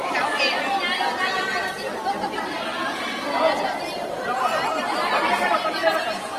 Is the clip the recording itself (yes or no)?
yes